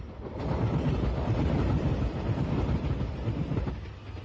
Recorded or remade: recorded